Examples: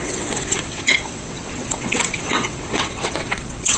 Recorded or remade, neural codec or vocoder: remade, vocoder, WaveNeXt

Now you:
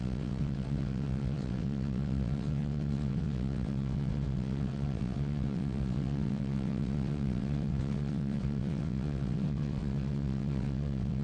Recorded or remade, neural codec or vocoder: remade, vocoder, WaveNeXt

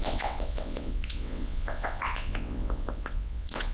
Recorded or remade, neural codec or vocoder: remade, vocoder, WaveNeXt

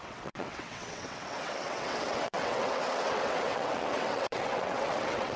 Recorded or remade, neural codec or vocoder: remade, vocoder, WaveNeXt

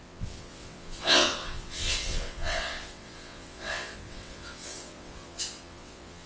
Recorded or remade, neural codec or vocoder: remade, vocoder, WaveNeXt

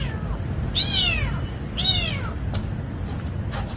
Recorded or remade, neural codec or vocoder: recorded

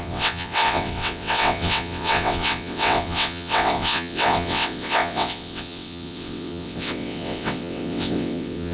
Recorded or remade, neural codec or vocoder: remade, vocoder, WaveNeXt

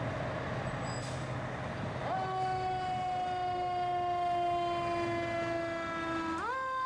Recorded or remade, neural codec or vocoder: recorded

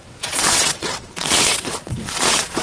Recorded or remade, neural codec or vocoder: remade, vocoder, WaveNeXt